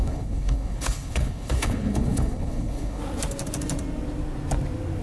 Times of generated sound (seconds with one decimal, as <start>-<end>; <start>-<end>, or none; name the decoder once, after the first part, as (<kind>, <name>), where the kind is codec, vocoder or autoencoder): 0.0-3.0 (codec, HILCodec)